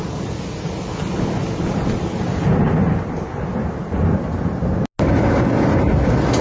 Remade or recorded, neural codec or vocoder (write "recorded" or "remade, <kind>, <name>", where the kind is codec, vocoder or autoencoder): recorded